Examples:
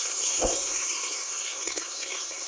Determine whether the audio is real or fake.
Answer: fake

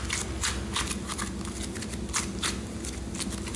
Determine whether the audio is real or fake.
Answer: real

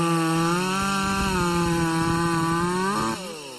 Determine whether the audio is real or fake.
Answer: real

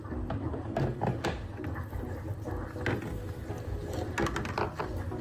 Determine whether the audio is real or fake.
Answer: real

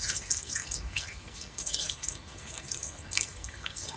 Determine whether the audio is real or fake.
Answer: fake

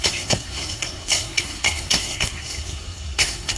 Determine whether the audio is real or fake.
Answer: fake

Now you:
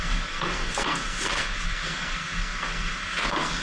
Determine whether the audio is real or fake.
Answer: fake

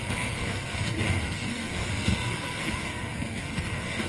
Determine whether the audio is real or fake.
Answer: fake